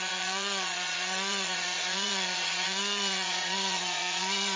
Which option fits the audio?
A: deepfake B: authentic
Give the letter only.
A